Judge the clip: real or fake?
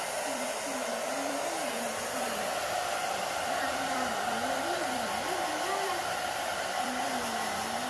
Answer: fake